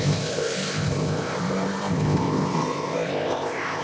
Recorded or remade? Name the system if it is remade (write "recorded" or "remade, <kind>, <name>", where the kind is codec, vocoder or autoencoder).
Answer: remade, codec, ZipCodec